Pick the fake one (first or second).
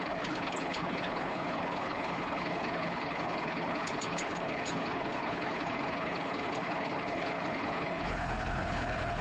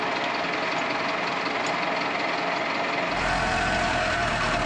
first